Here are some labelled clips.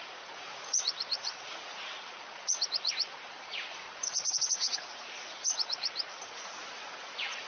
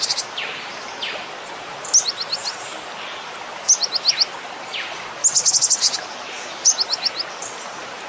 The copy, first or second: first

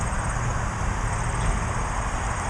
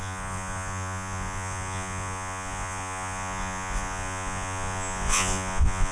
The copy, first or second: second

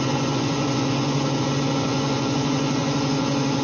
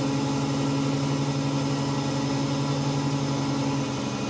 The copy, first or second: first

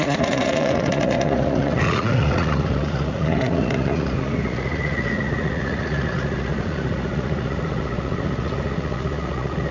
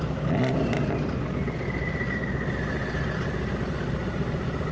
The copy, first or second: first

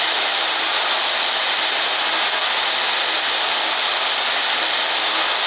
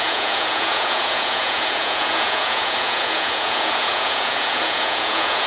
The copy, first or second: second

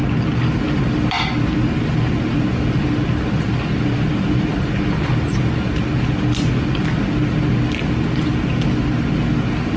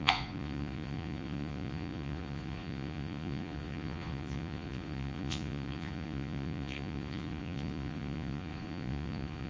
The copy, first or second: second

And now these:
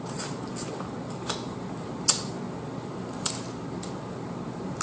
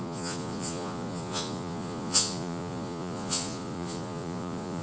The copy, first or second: second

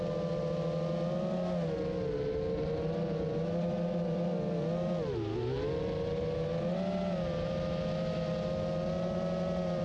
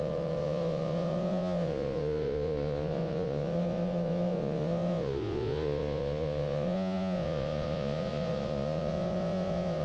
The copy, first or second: second